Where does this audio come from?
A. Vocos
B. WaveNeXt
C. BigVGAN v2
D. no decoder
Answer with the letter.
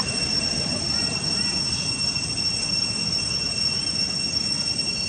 D